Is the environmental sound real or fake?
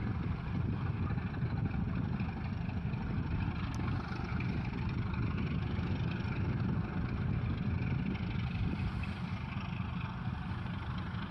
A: real